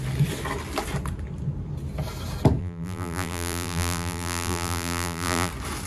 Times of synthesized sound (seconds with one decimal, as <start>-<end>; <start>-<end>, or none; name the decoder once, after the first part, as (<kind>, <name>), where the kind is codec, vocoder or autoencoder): 2.6-5.5 (vocoder, BigVGAN v2)